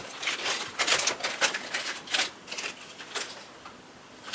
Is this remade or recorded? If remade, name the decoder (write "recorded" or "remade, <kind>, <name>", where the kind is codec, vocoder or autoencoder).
recorded